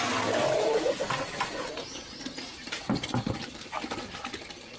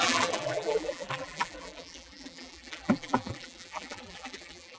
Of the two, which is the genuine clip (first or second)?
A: first